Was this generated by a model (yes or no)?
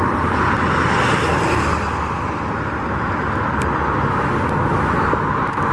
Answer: no